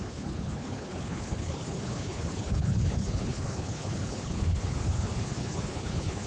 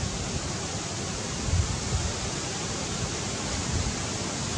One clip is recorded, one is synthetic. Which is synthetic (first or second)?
first